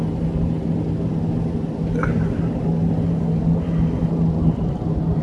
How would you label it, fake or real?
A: real